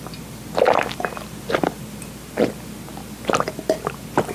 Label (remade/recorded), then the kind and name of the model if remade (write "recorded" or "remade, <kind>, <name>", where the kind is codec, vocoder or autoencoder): recorded